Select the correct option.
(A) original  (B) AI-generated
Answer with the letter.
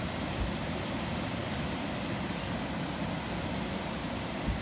A